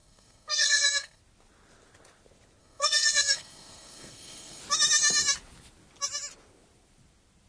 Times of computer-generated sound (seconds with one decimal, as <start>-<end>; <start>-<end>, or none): 0.0-1.2; 2.6-4.6